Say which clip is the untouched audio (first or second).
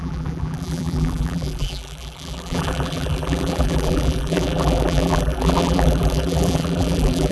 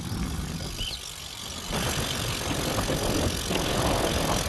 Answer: second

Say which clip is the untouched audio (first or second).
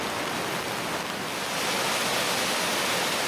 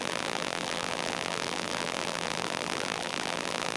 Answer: first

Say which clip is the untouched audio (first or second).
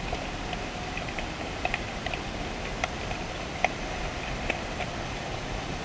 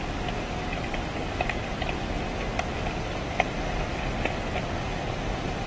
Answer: second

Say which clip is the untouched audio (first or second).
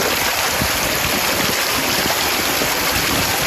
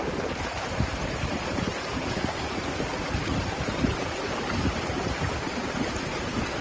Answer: first